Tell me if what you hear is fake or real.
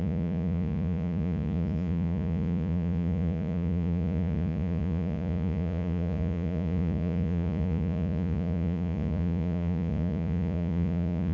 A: fake